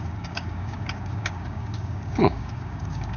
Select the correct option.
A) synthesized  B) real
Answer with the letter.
A